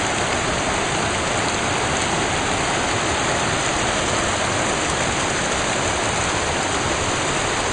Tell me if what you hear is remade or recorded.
recorded